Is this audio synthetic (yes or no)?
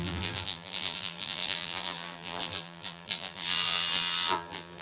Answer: yes